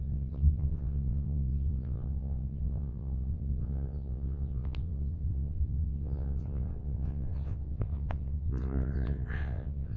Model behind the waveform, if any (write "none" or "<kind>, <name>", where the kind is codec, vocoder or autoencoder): vocoder, WaveNeXt